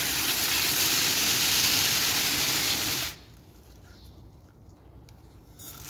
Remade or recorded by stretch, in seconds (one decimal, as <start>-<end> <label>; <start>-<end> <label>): 0.0-5.9 recorded

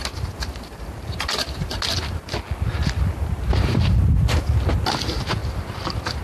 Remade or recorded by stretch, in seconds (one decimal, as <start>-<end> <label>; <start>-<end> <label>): 0.0-6.2 recorded